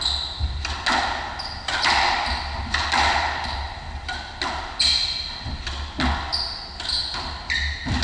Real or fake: real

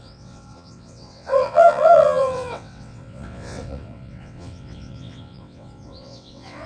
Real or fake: fake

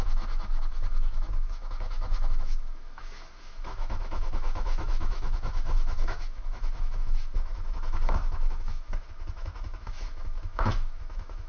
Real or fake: fake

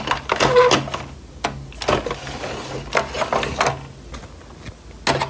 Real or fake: real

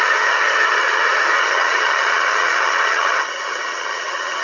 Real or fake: fake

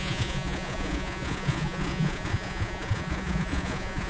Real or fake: fake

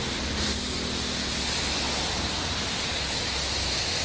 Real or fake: real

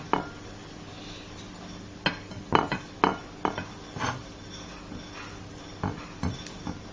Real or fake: real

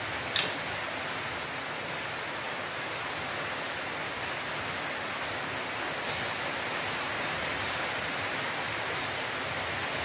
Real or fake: real